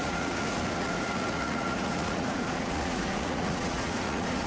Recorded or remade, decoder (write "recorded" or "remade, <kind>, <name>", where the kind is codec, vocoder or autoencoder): remade, vocoder, Vocos